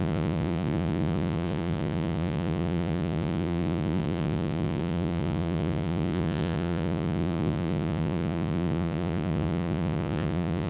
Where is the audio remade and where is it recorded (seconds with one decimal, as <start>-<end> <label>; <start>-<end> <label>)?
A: 0.0-10.7 remade